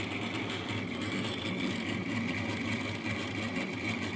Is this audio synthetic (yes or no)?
no